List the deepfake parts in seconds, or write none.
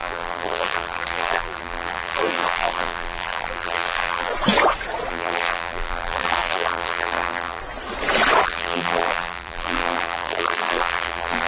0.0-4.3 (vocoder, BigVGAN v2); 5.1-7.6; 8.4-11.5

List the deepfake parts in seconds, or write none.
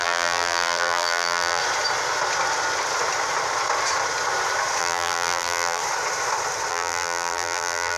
0.0-1.6 (vocoder, BigVGAN v2); 4.8-5.8; 6.7-8.0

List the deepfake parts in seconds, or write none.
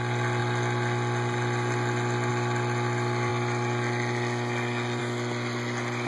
none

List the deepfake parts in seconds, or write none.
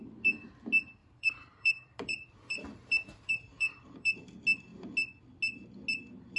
1.0-4.2 (vocoder, BigVGAN v2)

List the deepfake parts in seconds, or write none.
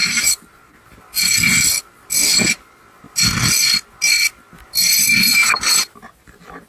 0.0-1.0 (vocoder, BigVGAN v2); 5.4-6.7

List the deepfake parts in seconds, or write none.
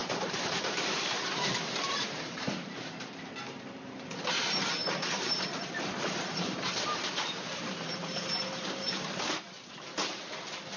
0.0-2.8 (vocoder, BigVGAN v2); 4.8-9.0